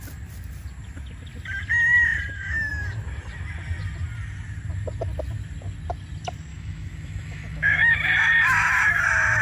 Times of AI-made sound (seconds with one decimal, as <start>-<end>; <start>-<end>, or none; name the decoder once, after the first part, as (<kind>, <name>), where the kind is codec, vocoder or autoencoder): 6.5-7.8 (autoencoder, DAC-VAE)